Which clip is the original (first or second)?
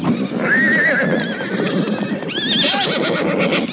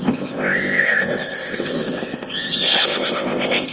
first